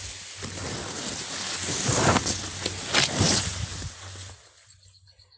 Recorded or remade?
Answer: recorded